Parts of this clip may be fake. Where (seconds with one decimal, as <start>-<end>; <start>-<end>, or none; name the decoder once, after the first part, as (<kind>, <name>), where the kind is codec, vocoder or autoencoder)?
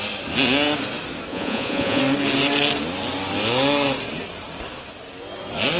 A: 1.3-2.0 (vocoder, Vocos)